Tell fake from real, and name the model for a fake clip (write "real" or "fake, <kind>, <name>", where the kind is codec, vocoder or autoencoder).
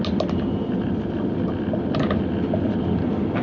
real